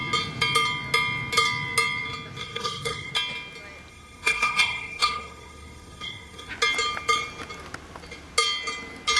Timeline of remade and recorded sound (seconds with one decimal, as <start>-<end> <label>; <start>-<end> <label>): 0.0-2.4 recorded; 2.4-3.1 remade; 3.1-3.9 recorded; 3.9-6.5 remade; 6.5-9.2 recorded